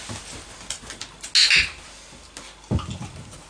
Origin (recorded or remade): recorded